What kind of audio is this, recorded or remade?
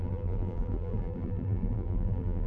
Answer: remade